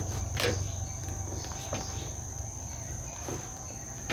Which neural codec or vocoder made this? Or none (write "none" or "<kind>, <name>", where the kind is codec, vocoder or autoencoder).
vocoder, BigVGAN v2